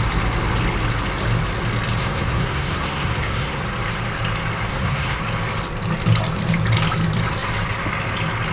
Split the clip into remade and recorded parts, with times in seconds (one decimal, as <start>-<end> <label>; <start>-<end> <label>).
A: 0.0-2.0 recorded; 2.0-3.6 remade; 3.6-4.7 recorded; 4.7-5.2 remade; 5.2-8.5 recorded